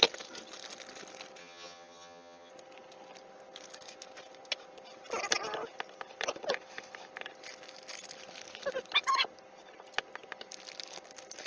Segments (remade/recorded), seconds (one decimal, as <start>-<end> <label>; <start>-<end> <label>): 0.0-1.4 recorded; 1.4-2.5 remade; 2.5-11.5 recorded